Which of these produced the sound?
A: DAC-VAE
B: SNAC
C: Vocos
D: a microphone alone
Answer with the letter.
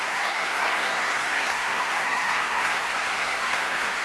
B